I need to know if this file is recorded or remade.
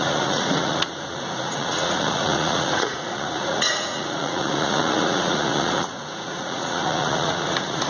remade